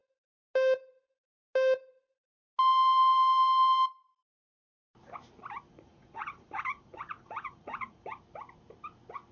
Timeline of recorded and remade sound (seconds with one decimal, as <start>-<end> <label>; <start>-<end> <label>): 0.0-5.7 recorded; 5.7-8.2 remade; 8.2-9.3 recorded